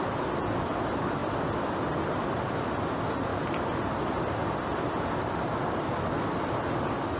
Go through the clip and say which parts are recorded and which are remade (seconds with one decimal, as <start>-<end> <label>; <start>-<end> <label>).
0.0-7.2 recorded

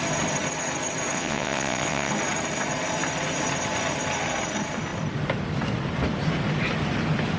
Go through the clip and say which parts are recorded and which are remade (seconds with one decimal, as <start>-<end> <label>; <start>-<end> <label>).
0.0-1.1 recorded; 1.1-2.1 remade; 2.1-7.4 recorded

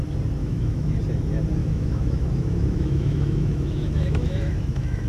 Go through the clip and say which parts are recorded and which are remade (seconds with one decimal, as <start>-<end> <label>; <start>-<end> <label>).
0.0-0.4 recorded; 0.4-1.0 remade; 1.0-1.6 recorded; 1.6-5.1 remade

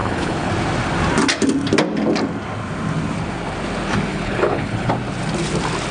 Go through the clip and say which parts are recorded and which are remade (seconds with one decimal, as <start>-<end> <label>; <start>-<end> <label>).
0.0-0.5 remade; 0.5-4.1 recorded; 4.1-4.9 remade; 4.9-5.9 recorded

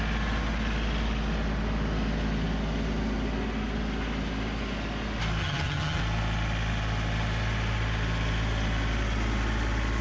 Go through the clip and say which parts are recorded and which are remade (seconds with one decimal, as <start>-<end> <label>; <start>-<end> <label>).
0.0-5.4 recorded; 5.4-6.0 remade; 6.0-10.0 recorded

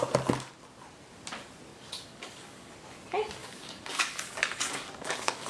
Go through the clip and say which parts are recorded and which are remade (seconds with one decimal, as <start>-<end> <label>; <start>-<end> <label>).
0.0-1.7 recorded; 1.7-2.7 remade; 2.7-3.4 recorded; 3.4-5.5 remade